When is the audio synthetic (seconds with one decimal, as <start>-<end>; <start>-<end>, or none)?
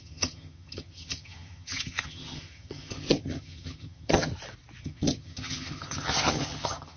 0.0-4.3; 4.8-7.0